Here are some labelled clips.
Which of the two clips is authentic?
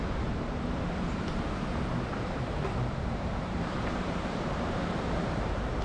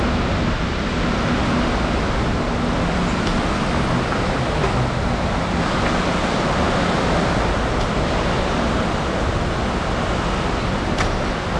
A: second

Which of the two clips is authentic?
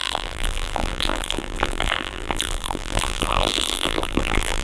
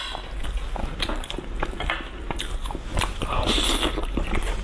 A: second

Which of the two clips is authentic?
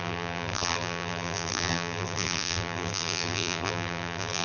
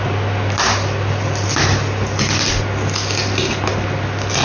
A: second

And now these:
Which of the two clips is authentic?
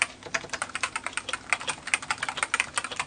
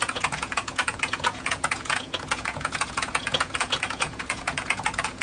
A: first